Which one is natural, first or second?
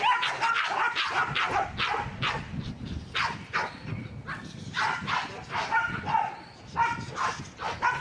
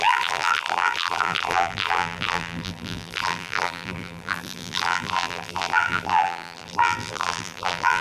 first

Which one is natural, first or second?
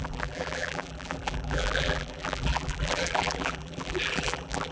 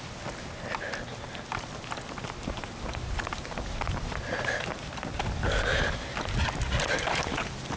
second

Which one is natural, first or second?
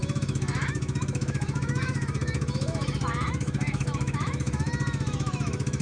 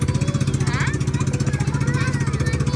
second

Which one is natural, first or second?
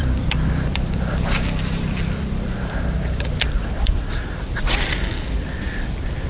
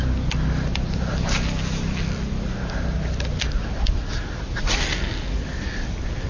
second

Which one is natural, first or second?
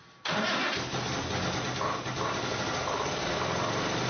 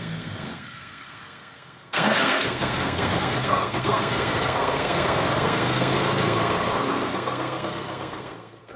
first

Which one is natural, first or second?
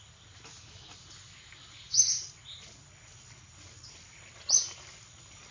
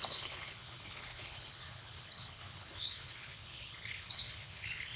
first